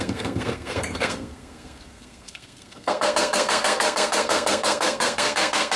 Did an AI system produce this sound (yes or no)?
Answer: yes